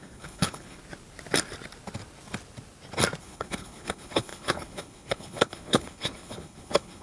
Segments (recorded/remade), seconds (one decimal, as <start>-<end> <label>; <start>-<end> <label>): 0.0-0.8 remade; 0.8-3.2 recorded; 3.2-7.0 remade